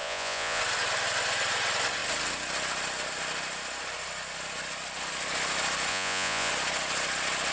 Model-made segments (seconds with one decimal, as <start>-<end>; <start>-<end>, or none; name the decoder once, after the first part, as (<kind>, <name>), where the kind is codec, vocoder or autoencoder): 0.0-0.6 (vocoder, Vocos); 5.9-6.5